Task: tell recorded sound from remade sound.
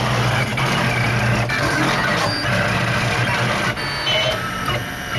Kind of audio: recorded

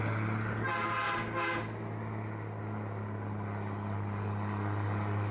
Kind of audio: recorded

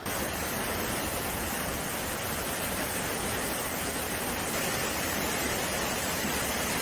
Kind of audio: recorded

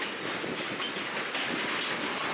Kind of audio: recorded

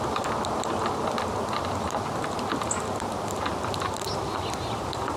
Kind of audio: recorded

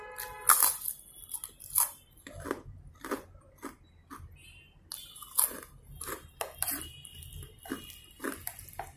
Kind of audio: recorded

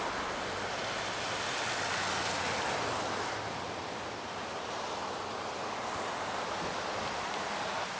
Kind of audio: recorded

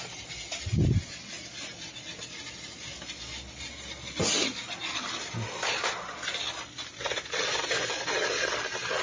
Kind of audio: recorded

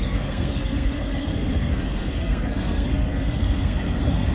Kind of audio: remade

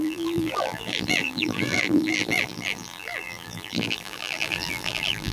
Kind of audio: remade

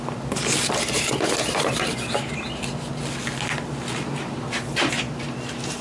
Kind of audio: recorded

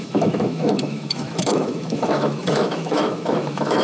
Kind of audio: remade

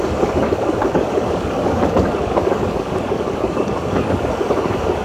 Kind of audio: remade